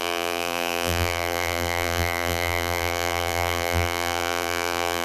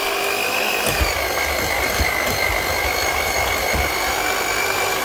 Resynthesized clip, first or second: first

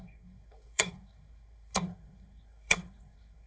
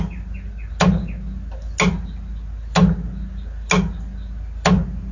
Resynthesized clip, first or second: first